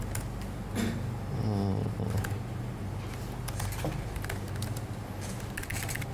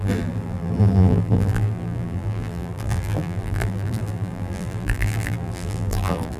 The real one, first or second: first